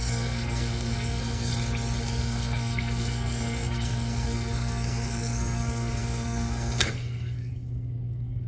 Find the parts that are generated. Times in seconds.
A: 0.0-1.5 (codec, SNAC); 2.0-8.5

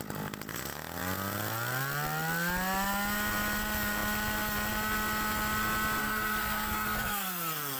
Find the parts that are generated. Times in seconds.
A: 6.0-7.8 (codec, SNAC)

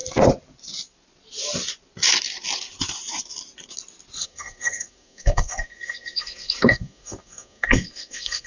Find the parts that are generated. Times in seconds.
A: 4.2-8.5 (codec, SNAC)

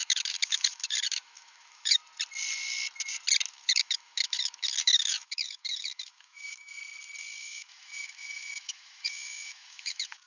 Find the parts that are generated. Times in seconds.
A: 0.0-2.0 (autoencoder, DAC-VAE); 3.5-6.8; 7.4-10.3

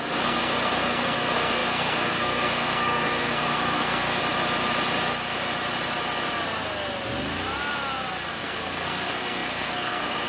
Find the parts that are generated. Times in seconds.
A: 0.0-4.2 (codec, SNAC); 8.3-10.3

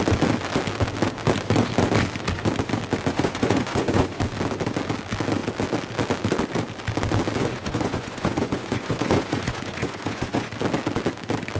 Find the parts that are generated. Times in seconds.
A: 3.1-4.2 (vocoder, Vocos); 7.4-10.5